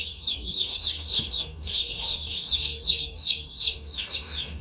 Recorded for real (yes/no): no